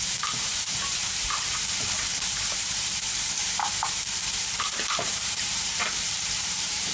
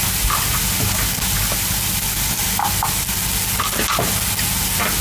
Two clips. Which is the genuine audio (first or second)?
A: second